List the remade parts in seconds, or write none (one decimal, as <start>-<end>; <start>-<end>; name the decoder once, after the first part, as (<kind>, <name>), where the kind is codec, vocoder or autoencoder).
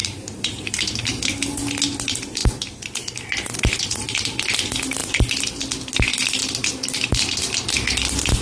0.0-0.7 (vocoder, BigVGAN v2); 5.0-5.6